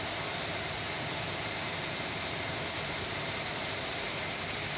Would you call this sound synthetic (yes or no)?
no